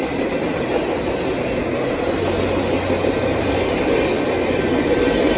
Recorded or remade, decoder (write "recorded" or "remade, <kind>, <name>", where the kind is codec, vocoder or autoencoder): recorded